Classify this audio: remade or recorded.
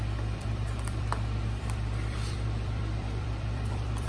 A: remade